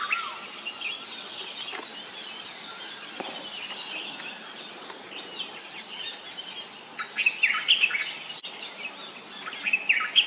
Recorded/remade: recorded